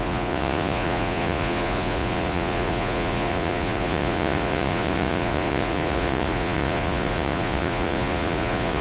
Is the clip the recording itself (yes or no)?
no